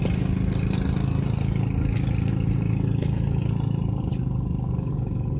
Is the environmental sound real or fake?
real